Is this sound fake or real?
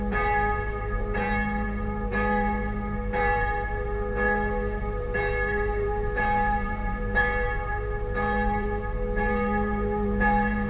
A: fake